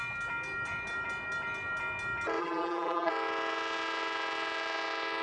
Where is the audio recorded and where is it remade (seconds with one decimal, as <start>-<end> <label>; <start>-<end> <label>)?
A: 0.0-2.4 recorded; 2.4-3.1 remade; 3.1-5.2 recorded